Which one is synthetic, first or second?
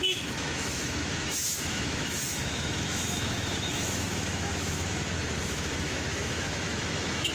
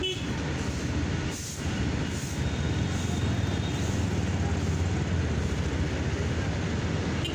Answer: first